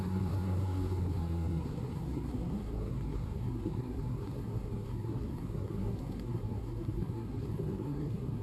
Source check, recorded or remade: remade